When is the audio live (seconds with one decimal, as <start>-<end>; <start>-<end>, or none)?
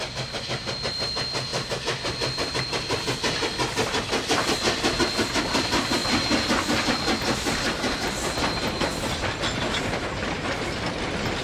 0.0-11.4